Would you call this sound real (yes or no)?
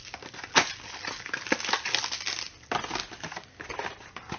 yes